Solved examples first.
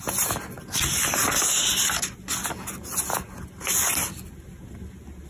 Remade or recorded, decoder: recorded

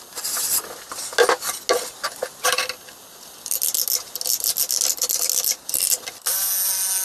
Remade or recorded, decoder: recorded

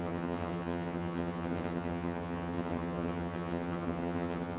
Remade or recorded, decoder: remade, vocoder, HiFi-GAN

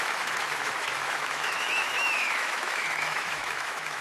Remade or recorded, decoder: remade, autoencoder, DAC-VAE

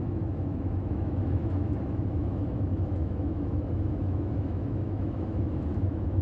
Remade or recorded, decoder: remade, autoencoder, DAC-VAE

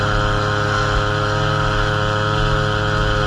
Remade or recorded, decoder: recorded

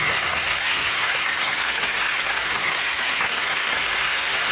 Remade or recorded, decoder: remade, codec, SNAC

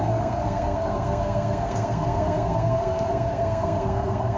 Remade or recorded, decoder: remade, codec, SNAC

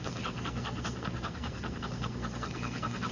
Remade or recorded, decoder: remade, codec, SNAC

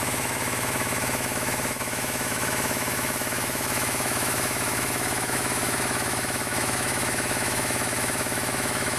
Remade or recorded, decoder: remade, autoencoder, DAC-VAE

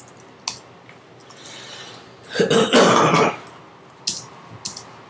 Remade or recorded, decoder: recorded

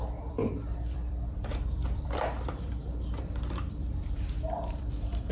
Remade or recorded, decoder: remade, vocoder, BigVGAN v2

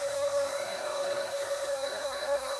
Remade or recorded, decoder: remade, codec, SNAC